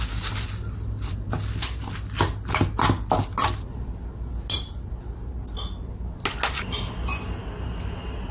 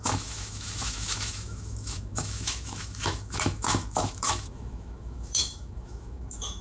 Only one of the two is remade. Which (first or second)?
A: second